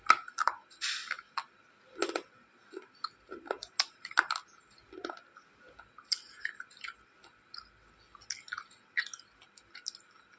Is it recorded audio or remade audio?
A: recorded